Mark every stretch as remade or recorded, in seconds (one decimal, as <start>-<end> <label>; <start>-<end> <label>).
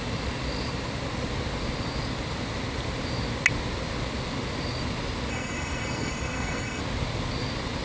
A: 0.0-5.3 recorded; 5.3-6.8 remade; 6.8-7.8 recorded